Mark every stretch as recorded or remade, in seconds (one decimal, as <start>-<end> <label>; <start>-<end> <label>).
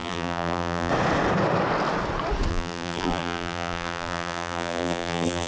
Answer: 0.0-0.9 remade; 0.9-2.5 recorded; 2.5-5.5 remade